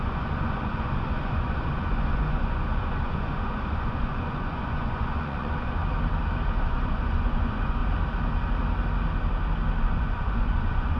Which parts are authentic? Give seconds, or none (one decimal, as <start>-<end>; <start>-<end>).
5.8-6.6; 7.8-9.8